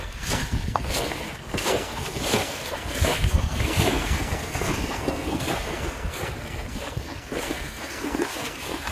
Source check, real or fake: fake